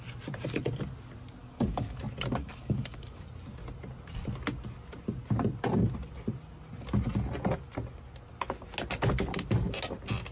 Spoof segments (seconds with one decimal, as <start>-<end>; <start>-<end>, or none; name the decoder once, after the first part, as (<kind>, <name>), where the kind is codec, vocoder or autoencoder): 1.4-2.0 (codec, DAC); 2.4-3.2